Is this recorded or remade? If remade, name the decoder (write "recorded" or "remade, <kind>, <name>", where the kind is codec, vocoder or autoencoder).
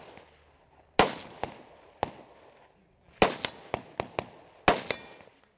recorded